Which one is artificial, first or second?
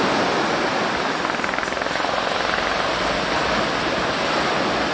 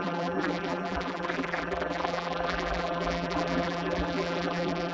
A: second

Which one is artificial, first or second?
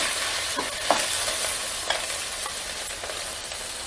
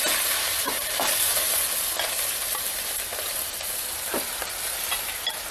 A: second